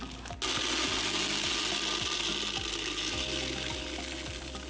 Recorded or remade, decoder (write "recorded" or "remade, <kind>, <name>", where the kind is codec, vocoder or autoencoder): recorded